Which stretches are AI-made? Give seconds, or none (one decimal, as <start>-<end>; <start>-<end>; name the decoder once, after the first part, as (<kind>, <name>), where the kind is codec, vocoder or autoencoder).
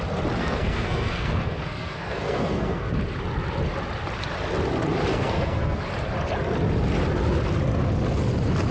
0.4-2.9 (codec, SNAC); 5.1-5.8